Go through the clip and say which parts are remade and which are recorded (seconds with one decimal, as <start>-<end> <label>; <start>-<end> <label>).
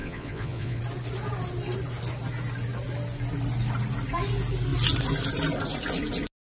0.0-0.8 remade; 0.8-6.5 recorded